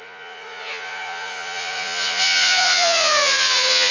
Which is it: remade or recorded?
remade